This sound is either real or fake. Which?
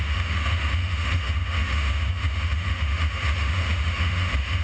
fake